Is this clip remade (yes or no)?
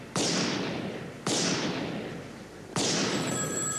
yes